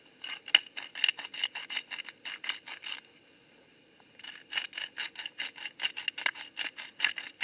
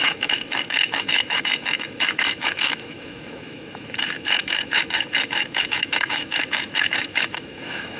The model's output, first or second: second